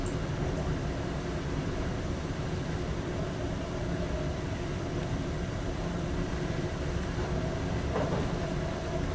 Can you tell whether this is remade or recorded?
remade